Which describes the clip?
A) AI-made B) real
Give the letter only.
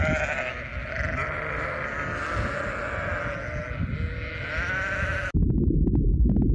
B